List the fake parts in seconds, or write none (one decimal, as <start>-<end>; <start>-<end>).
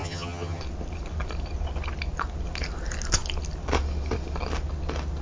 0.0-0.6